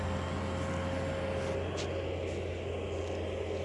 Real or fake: real